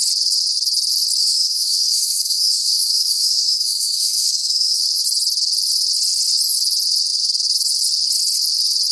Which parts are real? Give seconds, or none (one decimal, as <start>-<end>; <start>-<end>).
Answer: 0.0-1.2; 4.8-8.9